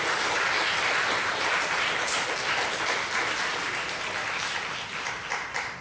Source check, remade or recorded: recorded